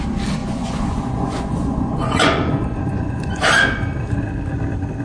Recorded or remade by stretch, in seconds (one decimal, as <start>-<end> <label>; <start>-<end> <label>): 0.0-0.4 recorded; 0.4-3.4 remade; 3.4-5.0 recorded